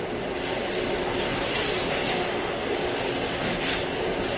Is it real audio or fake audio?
real